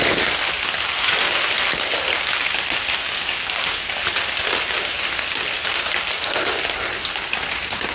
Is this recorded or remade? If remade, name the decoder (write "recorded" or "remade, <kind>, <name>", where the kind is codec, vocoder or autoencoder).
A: recorded